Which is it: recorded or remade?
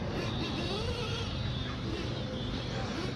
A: recorded